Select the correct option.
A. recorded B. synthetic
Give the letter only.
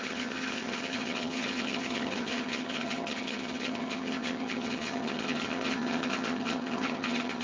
B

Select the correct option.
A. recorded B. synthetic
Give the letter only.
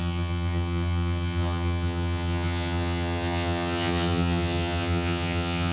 B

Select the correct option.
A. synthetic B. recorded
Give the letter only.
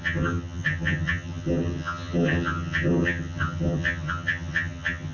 A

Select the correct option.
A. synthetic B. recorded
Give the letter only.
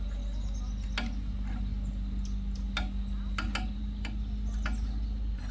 B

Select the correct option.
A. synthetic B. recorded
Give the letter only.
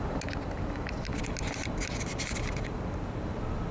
B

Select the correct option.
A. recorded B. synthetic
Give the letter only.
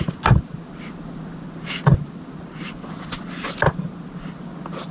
A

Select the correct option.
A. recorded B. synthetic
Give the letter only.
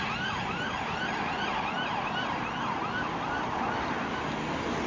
A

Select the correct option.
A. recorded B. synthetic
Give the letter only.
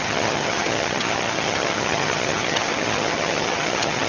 B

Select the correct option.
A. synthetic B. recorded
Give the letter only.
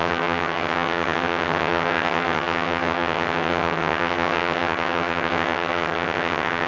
A